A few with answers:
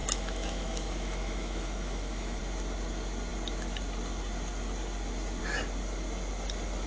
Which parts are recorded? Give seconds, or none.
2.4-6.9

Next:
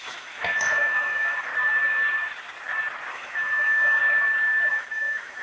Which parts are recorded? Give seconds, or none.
1.5-3.1; 4.0-4.7

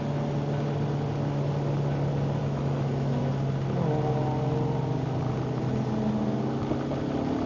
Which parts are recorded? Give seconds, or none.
0.0-2.4; 3.2-7.5